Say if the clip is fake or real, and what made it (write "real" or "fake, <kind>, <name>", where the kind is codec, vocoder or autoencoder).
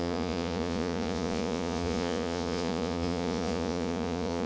fake, vocoder, Vocos